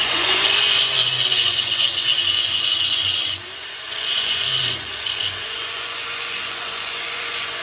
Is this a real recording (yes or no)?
no